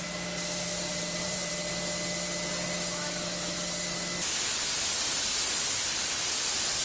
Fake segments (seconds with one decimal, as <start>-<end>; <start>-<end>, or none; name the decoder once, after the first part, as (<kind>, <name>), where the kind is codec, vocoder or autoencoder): 0.9-1.5 (vocoder, BigVGAN v2)